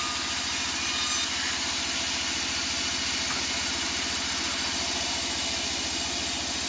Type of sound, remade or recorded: recorded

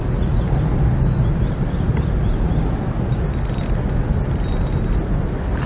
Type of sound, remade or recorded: recorded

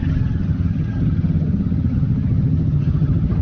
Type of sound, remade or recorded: remade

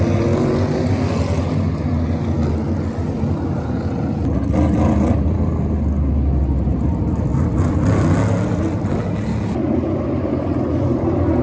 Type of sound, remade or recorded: recorded